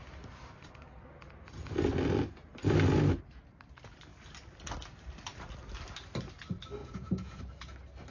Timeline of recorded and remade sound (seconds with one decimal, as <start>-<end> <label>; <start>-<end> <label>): 0.0-6.8 recorded; 6.8-7.4 remade; 7.4-8.1 recorded